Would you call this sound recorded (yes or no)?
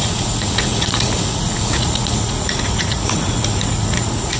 no